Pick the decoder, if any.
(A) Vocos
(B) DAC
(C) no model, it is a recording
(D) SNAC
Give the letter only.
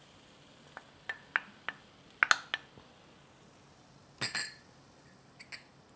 C